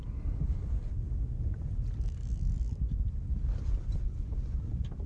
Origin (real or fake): real